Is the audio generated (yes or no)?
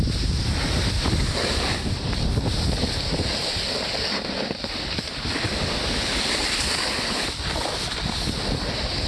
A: no